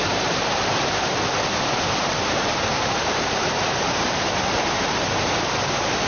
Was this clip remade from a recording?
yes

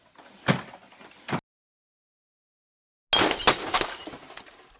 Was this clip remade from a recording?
no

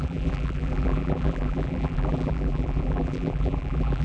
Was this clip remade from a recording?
yes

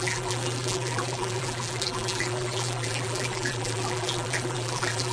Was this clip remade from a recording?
yes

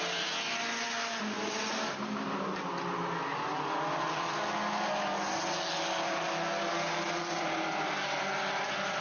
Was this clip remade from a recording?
no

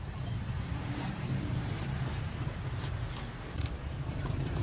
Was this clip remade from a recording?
yes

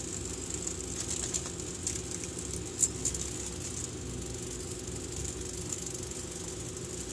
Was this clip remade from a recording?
no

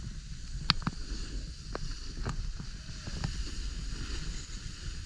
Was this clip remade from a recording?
no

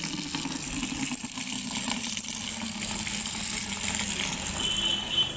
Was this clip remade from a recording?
no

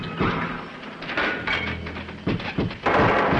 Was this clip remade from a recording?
no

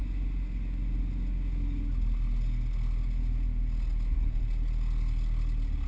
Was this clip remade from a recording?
no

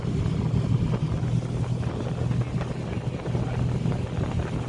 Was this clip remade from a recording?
no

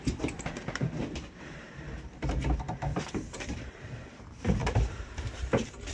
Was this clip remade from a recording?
yes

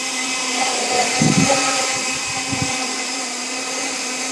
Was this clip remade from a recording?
yes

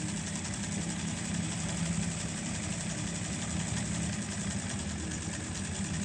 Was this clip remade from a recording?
no